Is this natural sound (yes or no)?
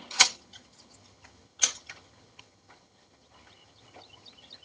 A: no